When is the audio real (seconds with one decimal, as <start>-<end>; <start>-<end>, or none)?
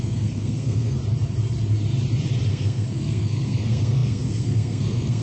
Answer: 1.0-2.5